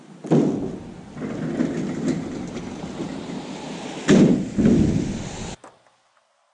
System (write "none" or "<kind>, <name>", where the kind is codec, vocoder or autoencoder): none